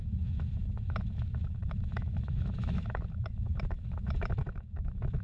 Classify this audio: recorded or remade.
remade